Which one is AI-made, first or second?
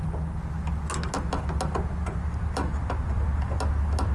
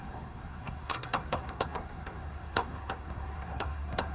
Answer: second